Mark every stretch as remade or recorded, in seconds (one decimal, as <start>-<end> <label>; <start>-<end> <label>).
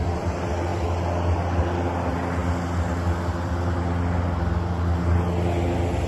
0.0-6.1 recorded